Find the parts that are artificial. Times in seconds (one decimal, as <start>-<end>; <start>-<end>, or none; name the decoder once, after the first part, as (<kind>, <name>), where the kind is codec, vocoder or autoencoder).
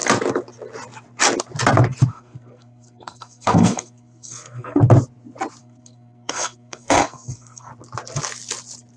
2.1-4.8 (codec, SNAC); 5.6-7.7